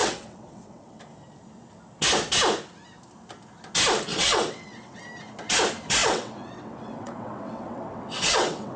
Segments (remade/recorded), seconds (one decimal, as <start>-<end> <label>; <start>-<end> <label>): 0.0-1.0 remade; 1.0-4.1 recorded; 4.1-5.0 remade; 5.0-6.0 recorded; 6.0-8.8 remade